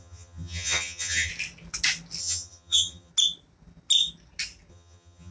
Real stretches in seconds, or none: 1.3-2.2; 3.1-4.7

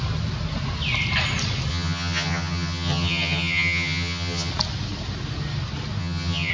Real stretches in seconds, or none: 0.0-1.7; 4.5-6.0

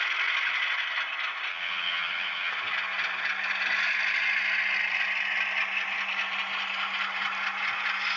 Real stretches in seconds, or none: 0.0-1.5; 2.5-8.2

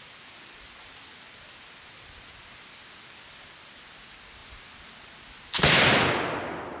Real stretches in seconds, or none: 0.0-6.8

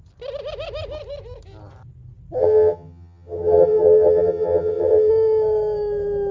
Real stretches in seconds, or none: 0.0-2.4; 5.1-6.3